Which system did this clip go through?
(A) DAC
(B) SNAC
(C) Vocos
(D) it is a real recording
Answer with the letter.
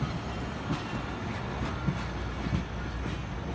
D